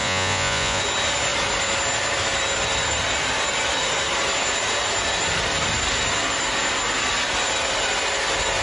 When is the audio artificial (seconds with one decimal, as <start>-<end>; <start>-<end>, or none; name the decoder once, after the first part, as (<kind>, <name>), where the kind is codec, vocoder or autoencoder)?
0.0-0.8 (vocoder, Vocos)